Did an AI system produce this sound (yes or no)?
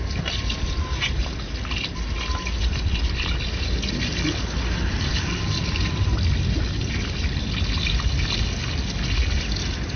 no